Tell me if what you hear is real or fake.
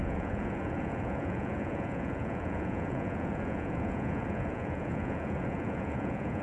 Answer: fake